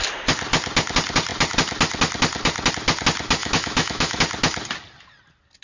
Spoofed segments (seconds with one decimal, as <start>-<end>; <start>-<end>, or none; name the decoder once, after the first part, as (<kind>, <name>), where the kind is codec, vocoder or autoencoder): 3.4-4.2 (autoencoder, DAC-VAE)